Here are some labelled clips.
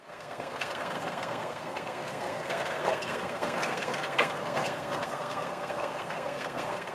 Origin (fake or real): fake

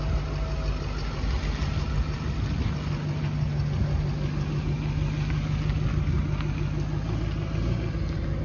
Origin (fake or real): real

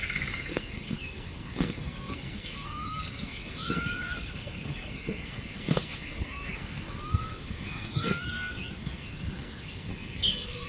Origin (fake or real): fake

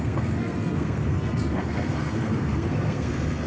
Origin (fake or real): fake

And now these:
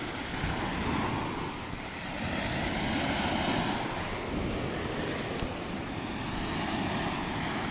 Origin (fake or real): real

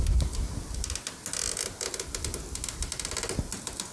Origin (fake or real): real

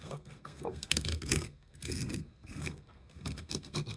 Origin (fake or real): fake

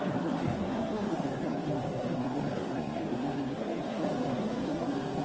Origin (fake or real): fake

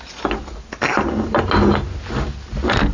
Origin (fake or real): real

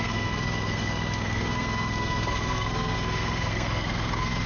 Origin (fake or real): fake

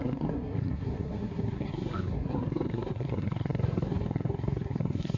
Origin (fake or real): fake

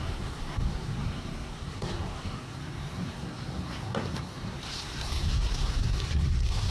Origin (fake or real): fake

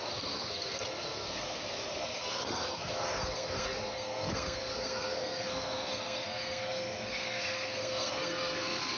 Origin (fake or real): fake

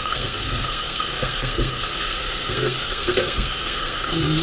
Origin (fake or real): fake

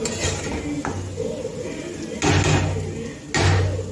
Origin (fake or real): real